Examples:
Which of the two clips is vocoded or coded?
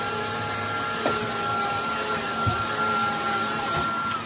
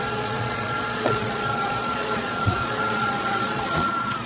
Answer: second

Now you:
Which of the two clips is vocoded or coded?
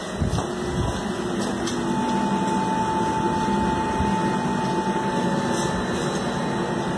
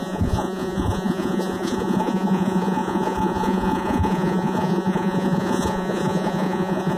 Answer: second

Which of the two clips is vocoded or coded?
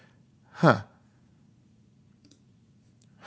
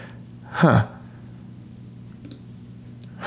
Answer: first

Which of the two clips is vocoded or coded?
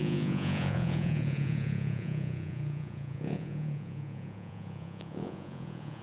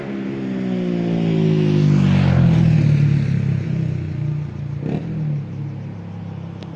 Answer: first